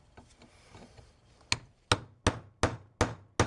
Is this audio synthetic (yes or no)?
no